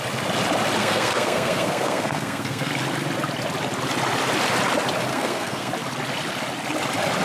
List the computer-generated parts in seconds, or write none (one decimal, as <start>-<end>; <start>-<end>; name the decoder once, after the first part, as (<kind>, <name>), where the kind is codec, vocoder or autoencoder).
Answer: 0.8-2.7 (codec, SNAC); 5.1-5.7